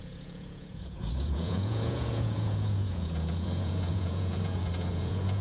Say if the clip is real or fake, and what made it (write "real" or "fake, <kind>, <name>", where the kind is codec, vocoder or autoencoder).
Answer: fake, vocoder, Vocos